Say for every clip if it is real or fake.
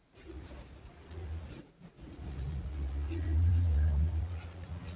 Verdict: fake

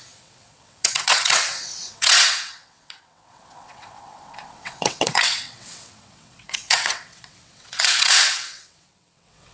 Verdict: fake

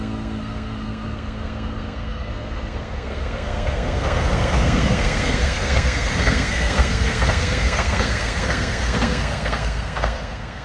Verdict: fake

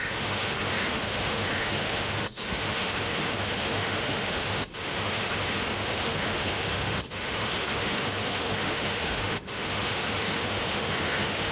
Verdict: fake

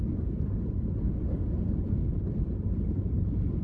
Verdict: real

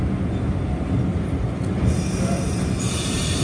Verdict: real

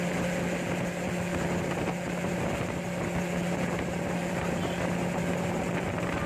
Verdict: real